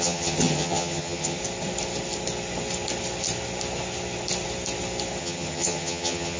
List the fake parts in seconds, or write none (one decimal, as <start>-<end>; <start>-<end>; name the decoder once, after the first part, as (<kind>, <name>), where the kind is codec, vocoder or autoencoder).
0.0-1.4 (vocoder, HiFi-GAN); 5.2-6.4